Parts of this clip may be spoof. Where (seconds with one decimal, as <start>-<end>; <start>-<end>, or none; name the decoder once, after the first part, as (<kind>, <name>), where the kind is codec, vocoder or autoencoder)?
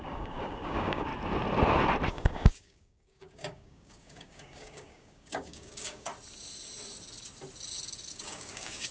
0.0-1.1 (codec, DAC); 2.1-6.1; 8.1-8.9